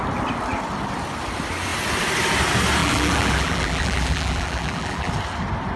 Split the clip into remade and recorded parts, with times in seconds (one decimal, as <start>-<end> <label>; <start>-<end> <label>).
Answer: 0.0-2.8 recorded; 2.8-5.1 remade; 5.1-5.8 recorded

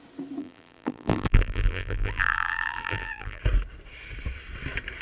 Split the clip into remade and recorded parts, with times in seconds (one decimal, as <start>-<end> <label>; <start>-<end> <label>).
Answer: 0.0-0.4 recorded; 0.4-3.4 remade; 3.4-5.0 recorded

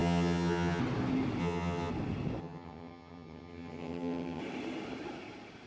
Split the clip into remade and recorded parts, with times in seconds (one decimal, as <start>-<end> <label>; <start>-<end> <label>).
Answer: 0.0-0.8 remade; 0.8-1.4 recorded; 1.4-1.9 remade; 1.9-2.4 recorded; 2.4-4.4 remade; 4.4-5.7 recorded

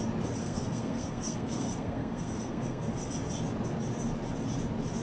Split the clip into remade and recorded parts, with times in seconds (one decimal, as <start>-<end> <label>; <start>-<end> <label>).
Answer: 0.0-0.4 recorded; 0.4-3.1 remade; 3.1-5.0 recorded

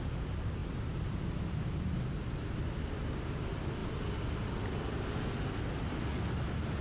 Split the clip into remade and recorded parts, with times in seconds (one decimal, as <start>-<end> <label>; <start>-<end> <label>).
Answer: 0.0-6.8 recorded

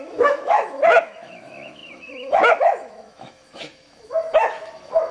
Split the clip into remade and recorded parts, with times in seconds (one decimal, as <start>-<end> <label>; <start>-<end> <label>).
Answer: 0.0-5.1 remade